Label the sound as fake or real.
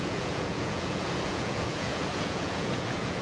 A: fake